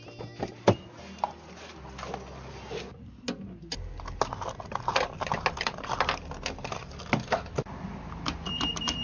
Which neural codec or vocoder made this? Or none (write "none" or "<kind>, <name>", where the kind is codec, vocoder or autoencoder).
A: none